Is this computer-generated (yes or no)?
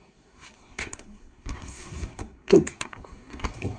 yes